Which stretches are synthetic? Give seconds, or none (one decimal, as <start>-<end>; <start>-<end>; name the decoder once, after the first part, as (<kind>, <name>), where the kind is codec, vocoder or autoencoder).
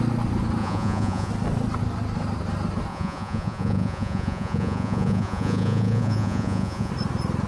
0.6-1.3 (vocoder, Vocos); 2.9-6.9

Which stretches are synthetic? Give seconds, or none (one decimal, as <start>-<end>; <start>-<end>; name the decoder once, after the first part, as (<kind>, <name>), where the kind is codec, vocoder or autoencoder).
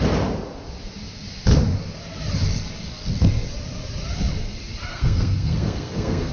4.9-6.3 (codec, SNAC)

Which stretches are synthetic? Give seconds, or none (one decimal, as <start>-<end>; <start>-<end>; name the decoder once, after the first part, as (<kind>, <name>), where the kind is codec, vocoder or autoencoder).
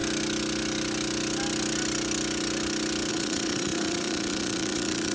3.1-5.1 (vocoder, Vocos)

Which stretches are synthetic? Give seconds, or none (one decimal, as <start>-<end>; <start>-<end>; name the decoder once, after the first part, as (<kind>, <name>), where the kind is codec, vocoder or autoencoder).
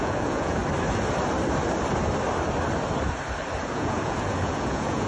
0.0-0.6 (vocoder, Vocos); 3.7-5.1